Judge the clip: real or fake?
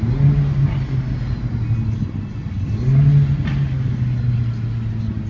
real